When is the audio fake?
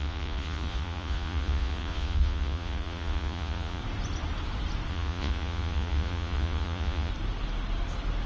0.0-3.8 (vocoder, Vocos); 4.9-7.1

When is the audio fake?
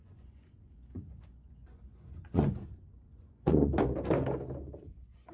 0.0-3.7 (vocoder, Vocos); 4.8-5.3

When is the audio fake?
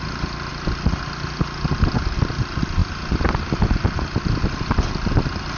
none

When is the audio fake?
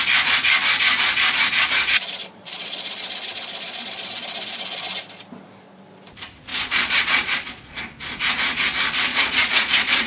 1.9-4.1 (vocoder, Vocos); 6.5-7.8; 9.1-10.1